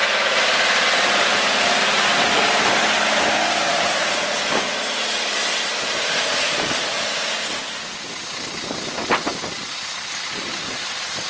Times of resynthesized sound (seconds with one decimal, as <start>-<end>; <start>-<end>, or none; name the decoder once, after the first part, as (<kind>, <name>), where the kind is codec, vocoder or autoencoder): 0.0-2.8 (vocoder, BigVGAN v2); 3.7-8.9; 9.3-10.6